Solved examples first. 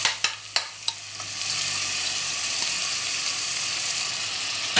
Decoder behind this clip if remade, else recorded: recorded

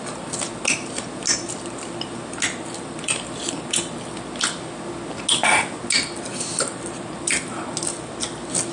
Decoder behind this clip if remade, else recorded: recorded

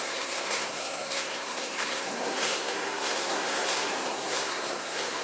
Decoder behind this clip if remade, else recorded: remade, codec, SNAC